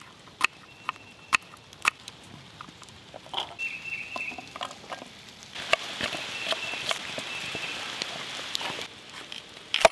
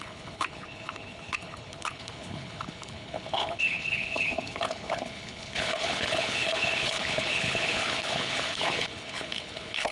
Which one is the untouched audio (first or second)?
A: first